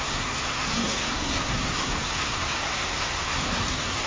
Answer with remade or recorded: remade